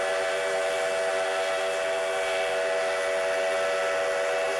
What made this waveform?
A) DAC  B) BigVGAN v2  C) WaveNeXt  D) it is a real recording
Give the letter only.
D